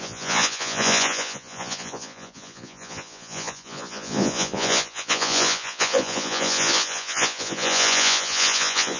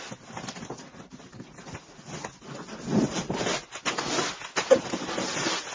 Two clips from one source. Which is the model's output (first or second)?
first